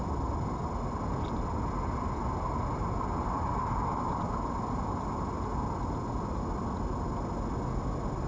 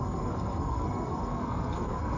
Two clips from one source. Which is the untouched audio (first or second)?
first